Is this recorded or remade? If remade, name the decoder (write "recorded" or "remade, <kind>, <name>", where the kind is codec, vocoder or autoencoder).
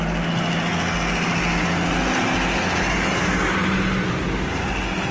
recorded